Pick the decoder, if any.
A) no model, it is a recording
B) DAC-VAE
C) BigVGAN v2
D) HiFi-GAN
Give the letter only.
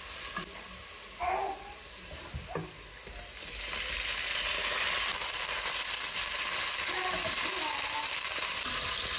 A